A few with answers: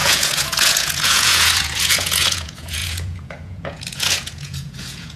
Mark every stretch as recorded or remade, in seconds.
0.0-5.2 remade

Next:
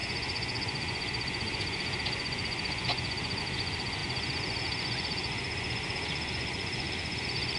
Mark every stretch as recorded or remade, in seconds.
0.0-7.6 remade

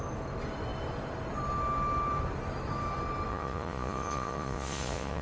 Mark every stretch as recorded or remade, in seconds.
0.0-3.3 recorded; 3.3-5.2 remade

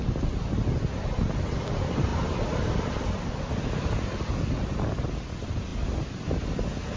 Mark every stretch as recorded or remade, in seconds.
0.0-7.0 recorded

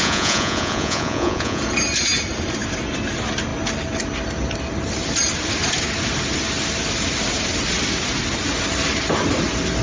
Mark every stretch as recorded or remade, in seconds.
0.0-1.6 remade; 1.6-9.8 recorded

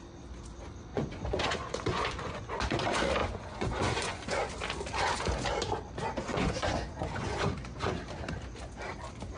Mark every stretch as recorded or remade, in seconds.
0.0-0.9 recorded; 0.9-2.8 remade; 2.8-3.2 recorded; 3.2-4.5 remade; 4.5-6.3 recorded; 6.3-8.0 remade; 8.0-9.4 recorded

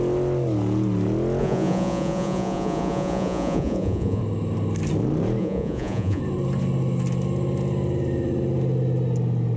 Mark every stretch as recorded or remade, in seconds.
0.0-1.4 recorded; 1.4-4.2 remade; 4.2-5.4 recorded; 5.4-6.2 remade; 6.2-9.6 recorded